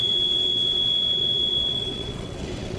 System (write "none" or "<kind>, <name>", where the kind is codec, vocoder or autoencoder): vocoder, WaveNeXt